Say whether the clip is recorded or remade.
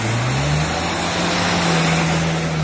recorded